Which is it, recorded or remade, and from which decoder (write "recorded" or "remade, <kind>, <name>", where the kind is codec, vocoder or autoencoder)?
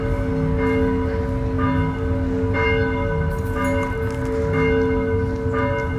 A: recorded